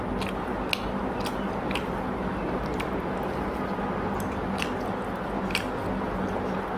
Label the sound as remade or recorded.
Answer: recorded